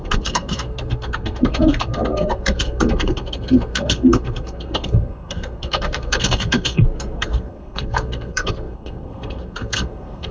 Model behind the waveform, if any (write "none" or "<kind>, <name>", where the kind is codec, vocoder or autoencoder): codec, SNAC